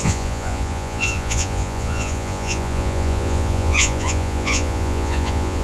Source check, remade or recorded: remade